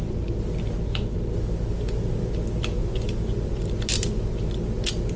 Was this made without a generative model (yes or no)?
yes